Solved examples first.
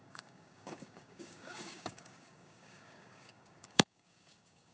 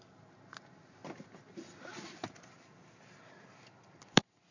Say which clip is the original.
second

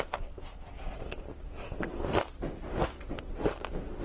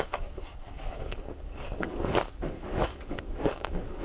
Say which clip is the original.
first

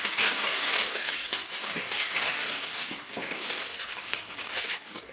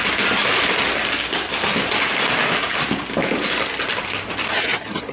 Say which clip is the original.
second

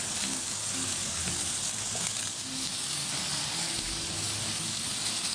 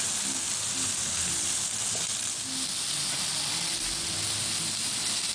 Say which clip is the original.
second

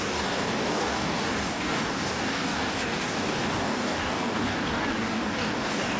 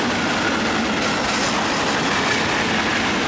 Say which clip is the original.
second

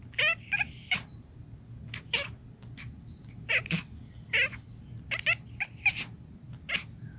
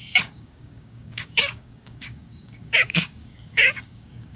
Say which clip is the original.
first